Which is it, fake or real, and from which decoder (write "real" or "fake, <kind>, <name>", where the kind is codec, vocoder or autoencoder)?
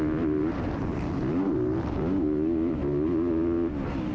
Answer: real